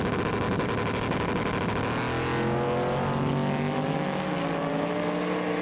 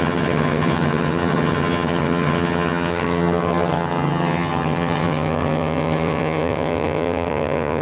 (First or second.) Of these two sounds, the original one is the first